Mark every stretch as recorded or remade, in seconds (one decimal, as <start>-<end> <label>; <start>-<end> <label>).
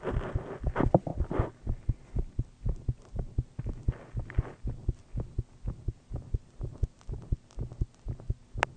0.0-8.8 recorded